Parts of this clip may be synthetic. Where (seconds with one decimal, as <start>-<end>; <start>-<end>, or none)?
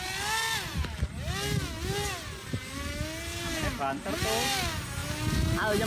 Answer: none